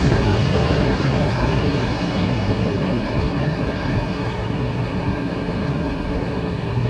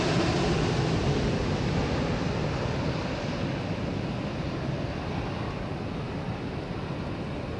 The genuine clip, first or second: second